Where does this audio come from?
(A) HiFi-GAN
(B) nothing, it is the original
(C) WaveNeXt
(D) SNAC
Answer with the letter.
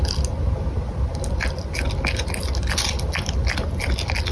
B